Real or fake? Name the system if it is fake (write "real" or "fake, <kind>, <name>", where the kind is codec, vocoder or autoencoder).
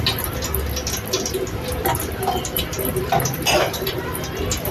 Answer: real